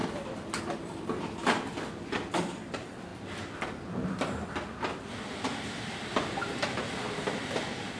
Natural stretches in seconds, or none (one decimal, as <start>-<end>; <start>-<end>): 0.0-8.0